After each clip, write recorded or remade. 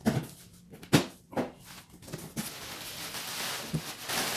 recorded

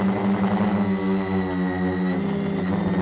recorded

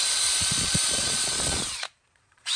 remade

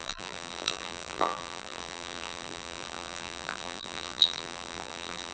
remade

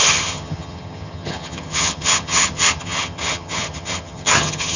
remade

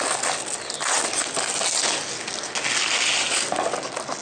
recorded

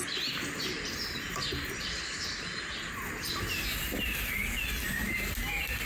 recorded